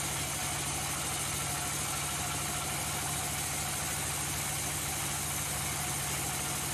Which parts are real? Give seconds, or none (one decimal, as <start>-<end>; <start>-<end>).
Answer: 0.0-6.7

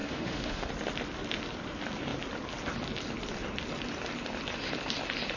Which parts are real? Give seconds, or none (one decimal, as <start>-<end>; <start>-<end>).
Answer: 0.7-5.4